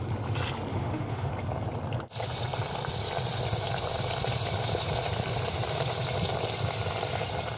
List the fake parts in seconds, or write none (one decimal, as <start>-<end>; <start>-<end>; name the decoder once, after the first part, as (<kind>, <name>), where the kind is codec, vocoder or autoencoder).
0.7-1.3 (autoencoder, DAC-VAE)